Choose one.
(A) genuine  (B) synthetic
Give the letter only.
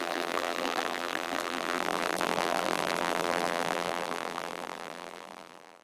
B